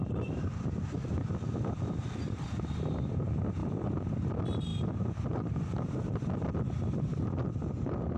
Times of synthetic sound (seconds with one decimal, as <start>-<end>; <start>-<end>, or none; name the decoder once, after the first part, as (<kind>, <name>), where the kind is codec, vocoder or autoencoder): 0.0-4.7 (vocoder, BigVGAN v2); 5.8-8.2